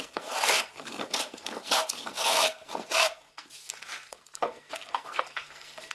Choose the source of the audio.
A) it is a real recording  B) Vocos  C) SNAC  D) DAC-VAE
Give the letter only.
C